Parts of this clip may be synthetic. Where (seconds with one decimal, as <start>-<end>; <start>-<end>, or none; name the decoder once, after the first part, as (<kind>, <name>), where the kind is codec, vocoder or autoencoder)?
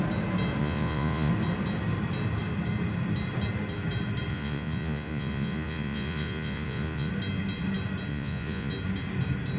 0.6-1.3 (vocoder, Vocos); 4.3-7.1; 8.1-8.7